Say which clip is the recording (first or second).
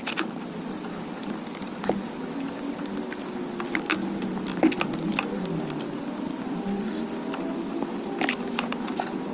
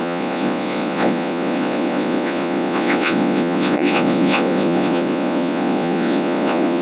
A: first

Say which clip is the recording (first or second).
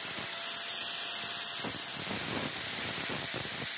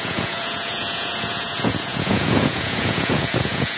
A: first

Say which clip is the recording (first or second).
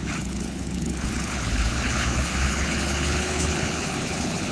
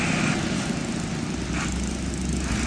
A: second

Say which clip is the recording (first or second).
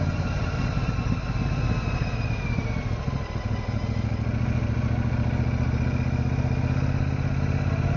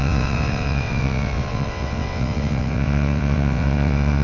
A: first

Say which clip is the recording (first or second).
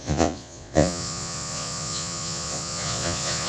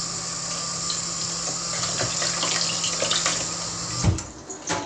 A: second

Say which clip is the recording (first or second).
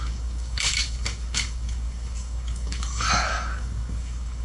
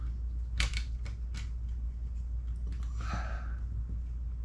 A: second